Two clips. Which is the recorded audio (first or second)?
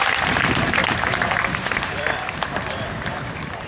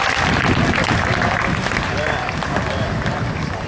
second